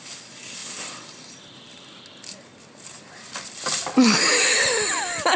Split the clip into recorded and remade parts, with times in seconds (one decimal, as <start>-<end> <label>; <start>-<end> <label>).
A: 0.0-5.4 recorded